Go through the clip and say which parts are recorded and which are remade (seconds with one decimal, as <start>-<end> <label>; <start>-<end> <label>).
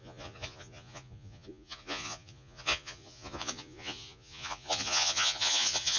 0.0-6.0 remade